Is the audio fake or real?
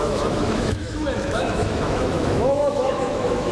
fake